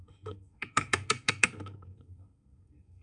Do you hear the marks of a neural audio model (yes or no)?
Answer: yes